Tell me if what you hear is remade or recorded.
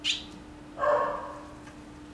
recorded